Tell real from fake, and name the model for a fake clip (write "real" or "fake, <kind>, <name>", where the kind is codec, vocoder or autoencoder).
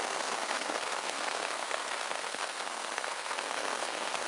fake, codec, SNAC